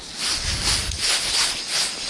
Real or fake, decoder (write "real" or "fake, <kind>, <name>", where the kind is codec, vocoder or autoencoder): real